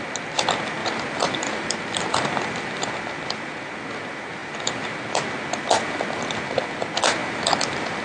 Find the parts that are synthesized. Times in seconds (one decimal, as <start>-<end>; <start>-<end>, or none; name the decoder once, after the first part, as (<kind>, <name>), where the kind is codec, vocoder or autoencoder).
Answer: 0.8-3.8 (vocoder, BigVGAN v2); 4.4-5.3; 7.2-8.0